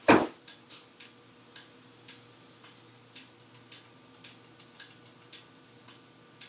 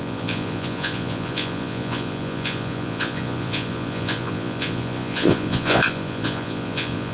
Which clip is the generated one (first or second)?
second